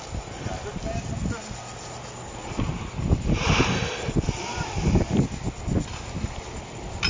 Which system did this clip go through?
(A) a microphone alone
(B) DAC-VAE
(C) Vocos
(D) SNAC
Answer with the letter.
A